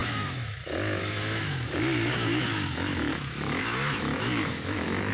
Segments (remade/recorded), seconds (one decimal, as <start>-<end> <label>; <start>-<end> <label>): 0.0-5.1 remade